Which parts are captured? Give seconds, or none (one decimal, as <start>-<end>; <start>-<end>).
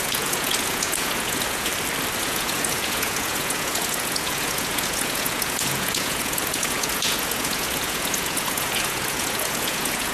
1.7-2.2